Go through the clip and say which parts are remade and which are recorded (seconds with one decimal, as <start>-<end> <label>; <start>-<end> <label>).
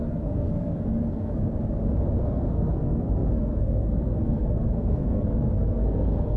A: 0.0-1.4 remade; 1.4-2.2 recorded; 2.2-6.4 remade